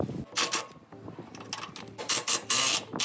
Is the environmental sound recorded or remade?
recorded